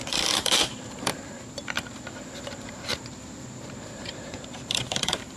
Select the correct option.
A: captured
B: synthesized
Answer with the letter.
B